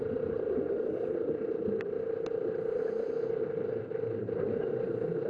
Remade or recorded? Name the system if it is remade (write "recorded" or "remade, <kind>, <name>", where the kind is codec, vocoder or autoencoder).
recorded